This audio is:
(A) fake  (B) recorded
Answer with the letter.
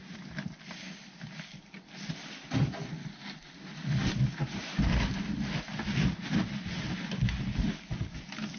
B